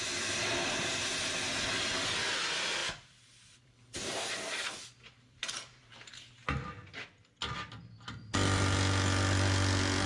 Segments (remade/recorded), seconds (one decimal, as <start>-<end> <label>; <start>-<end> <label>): 0.0-2.8 recorded; 2.8-6.1 remade; 6.1-10.1 recorded